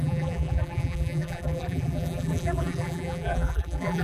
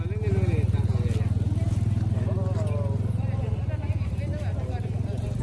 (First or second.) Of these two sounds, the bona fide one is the second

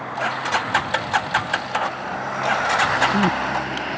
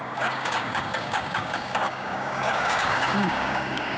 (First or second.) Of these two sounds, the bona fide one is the first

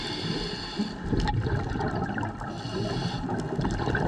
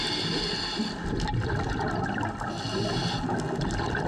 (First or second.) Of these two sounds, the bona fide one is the second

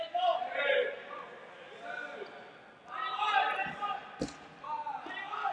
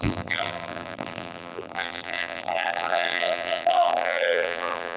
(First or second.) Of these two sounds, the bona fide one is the first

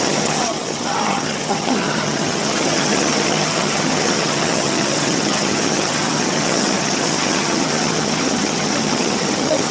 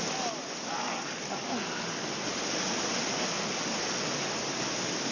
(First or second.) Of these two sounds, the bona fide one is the second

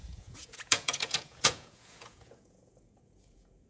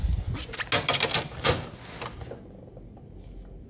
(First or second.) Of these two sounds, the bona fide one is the second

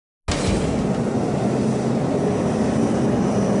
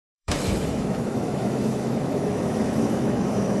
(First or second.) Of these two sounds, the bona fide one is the first